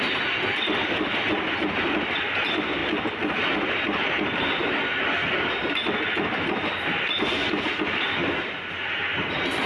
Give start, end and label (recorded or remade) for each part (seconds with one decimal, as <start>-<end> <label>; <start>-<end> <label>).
0.0-9.7 recorded